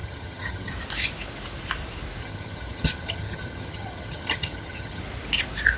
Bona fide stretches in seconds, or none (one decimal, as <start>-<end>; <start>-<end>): 0.7-2.2; 5.0-5.8